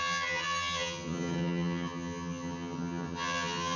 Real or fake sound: fake